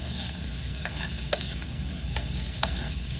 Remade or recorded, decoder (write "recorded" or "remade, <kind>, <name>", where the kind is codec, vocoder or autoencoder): remade, codec, SNAC